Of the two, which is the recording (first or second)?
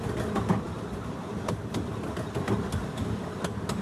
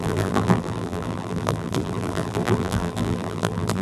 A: first